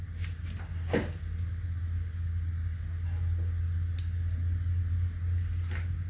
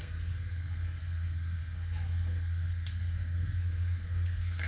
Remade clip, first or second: second